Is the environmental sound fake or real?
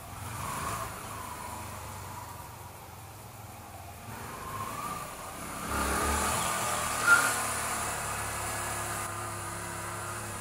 fake